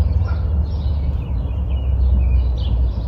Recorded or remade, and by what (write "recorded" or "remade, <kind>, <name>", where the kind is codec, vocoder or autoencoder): recorded